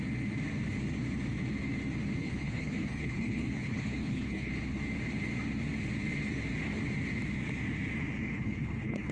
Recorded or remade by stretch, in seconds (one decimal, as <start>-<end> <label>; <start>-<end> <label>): 0.0-2.2 recorded; 2.2-4.5 remade; 4.5-8.3 recorded; 8.3-9.1 remade